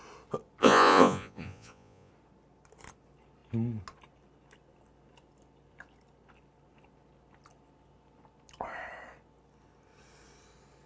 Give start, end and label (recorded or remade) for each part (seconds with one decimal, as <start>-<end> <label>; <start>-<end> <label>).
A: 0.0-0.6 recorded; 0.6-2.1 remade; 2.1-10.9 recorded